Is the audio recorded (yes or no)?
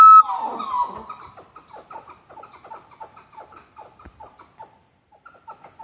yes